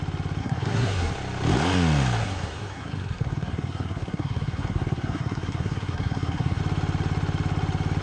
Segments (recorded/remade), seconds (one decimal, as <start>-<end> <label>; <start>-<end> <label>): 0.0-0.4 recorded; 0.4-1.1 remade; 1.1-2.2 recorded; 2.2-6.6 remade; 6.6-8.0 recorded